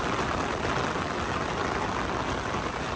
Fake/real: real